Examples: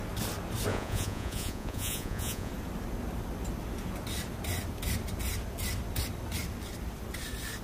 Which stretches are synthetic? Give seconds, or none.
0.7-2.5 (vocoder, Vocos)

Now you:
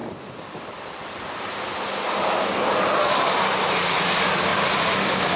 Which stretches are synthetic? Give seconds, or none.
0.0-1.7 (vocoder, BigVGAN v2); 4.5-5.4

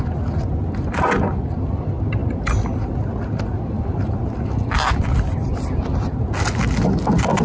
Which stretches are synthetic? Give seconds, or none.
none

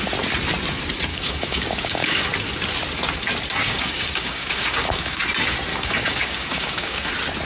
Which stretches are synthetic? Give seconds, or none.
1.1-2.2 (codec, DAC); 3.6-5.2; 5.7-7.1

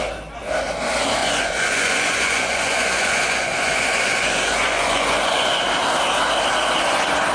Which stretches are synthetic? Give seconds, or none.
1.2-5.6 (vocoder, Vocos)

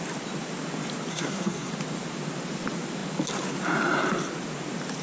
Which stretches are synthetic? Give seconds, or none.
1.1-1.7 (codec, SNAC)

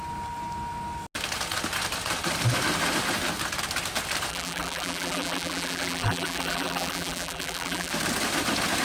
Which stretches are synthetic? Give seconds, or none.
4.3-7.9 (vocoder, BigVGAN v2)

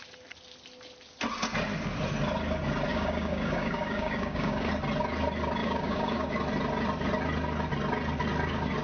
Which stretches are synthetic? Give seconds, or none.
2.9-4.7 (codec, DAC); 5.6-6.3